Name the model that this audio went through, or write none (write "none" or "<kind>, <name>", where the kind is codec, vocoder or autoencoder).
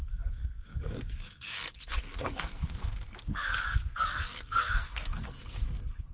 codec, SNAC